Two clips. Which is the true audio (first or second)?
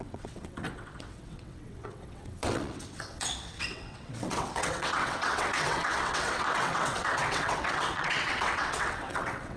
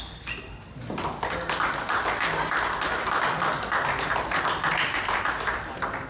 second